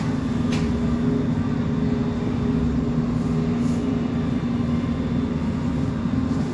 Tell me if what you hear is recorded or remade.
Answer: recorded